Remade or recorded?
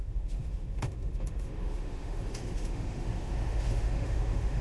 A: remade